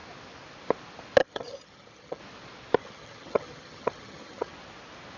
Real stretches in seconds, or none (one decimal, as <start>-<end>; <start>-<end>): 0.0-1.2; 2.2-2.8; 4.5-5.2